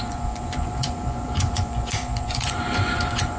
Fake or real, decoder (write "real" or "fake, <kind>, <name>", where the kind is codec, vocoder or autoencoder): fake, vocoder, Vocos